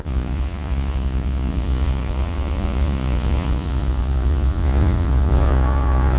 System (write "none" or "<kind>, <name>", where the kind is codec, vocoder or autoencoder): vocoder, Vocos